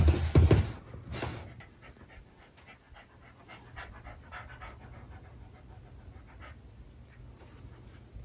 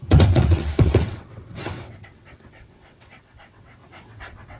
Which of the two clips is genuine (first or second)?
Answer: first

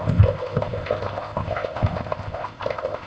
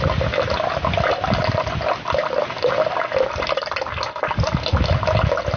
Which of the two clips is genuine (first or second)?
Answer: second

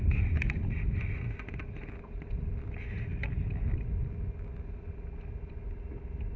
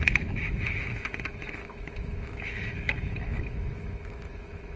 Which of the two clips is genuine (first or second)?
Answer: first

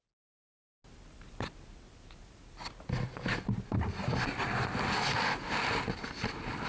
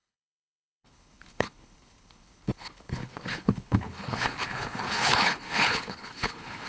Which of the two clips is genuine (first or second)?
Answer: first